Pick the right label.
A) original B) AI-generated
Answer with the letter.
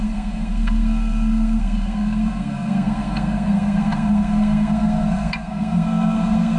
B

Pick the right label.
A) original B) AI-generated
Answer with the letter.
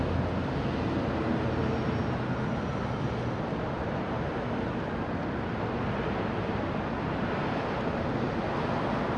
A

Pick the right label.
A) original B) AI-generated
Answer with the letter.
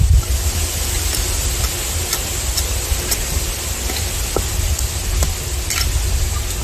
A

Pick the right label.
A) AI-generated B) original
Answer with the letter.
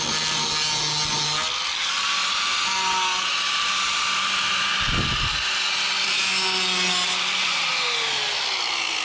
B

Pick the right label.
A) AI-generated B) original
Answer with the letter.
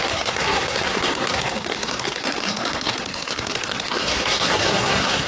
A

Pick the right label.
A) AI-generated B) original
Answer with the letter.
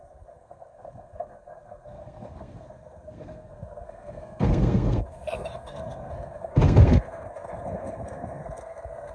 A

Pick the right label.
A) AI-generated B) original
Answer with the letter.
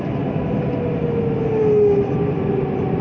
B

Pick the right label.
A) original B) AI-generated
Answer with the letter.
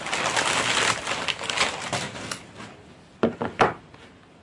A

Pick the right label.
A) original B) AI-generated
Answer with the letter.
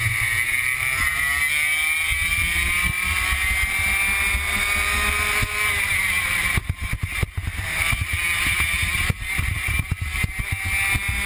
A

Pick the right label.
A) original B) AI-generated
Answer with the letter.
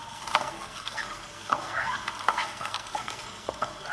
B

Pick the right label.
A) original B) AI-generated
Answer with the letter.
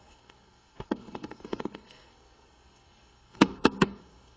B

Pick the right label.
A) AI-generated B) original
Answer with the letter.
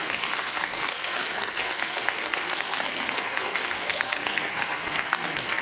A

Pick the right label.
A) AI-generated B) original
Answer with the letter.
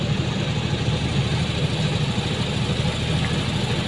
B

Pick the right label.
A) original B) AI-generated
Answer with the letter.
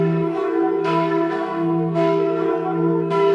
B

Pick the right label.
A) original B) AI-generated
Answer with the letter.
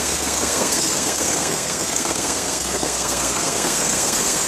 B